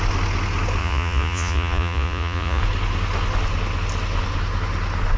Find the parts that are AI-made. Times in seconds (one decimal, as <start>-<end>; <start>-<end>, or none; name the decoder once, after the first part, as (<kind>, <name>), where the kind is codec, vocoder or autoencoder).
0.8-2.6 (vocoder, Vocos)